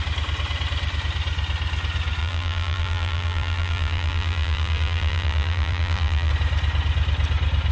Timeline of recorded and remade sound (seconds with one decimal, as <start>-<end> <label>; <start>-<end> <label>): 0.0-2.2 recorded; 2.2-6.3 remade; 6.3-7.7 recorded